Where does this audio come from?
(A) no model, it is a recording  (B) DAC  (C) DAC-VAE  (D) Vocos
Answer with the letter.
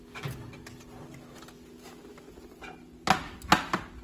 A